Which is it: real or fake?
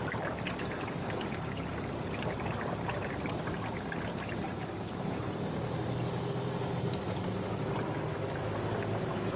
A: real